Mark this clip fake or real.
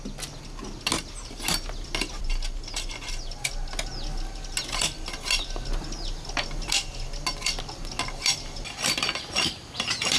real